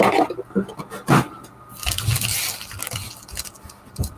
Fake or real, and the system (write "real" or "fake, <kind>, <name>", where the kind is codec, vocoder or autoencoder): real